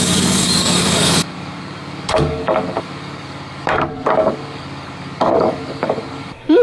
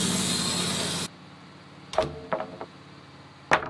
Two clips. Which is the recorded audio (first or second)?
second